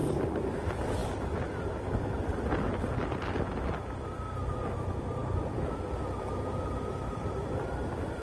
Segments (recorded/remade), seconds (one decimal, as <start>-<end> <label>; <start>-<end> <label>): 0.0-8.2 recorded